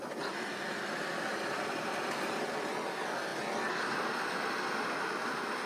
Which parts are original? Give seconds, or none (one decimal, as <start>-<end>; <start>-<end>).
0.0-1.3; 2.7-5.7